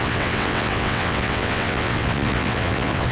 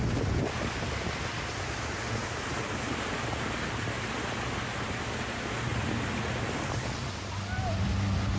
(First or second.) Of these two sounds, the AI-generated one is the first